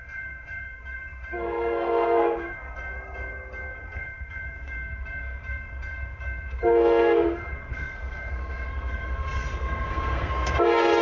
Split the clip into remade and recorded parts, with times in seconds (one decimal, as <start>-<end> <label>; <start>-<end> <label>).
0.0-11.0 remade